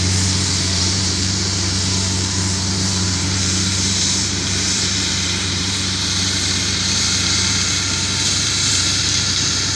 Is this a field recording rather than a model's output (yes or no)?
no